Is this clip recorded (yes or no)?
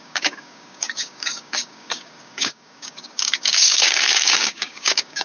no